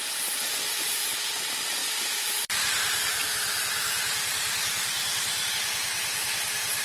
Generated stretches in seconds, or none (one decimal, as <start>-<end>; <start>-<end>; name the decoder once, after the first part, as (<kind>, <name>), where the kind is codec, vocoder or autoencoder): 1.8-5.5 (vocoder, BigVGAN v2)